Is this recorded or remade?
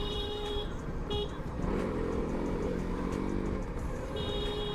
remade